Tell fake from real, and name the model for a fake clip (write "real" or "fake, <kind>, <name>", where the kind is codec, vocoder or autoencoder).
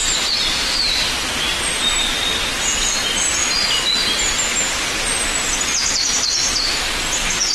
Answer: real